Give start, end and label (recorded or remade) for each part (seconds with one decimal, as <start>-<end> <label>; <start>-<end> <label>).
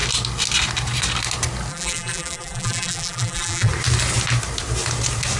0.0-1.7 recorded; 1.7-3.7 remade; 3.7-5.4 recorded